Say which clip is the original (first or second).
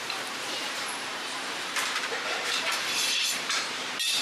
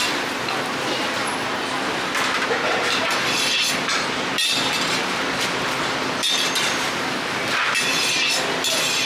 second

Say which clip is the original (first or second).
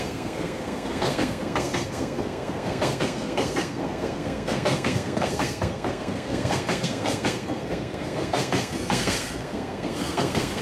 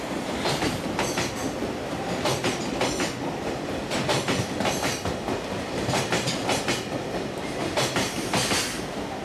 second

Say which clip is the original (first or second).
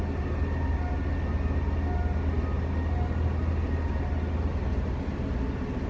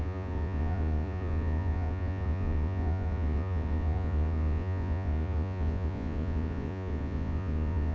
first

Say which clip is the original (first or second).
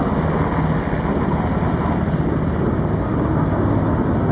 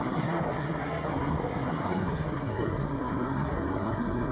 first